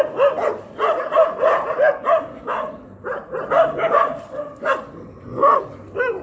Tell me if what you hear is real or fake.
real